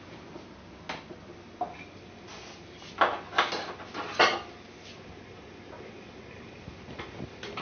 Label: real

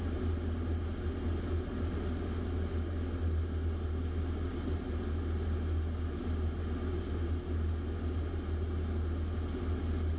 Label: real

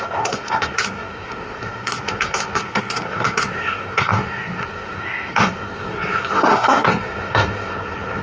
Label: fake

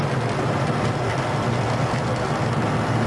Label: real